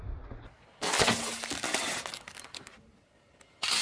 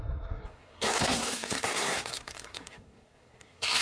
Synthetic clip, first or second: second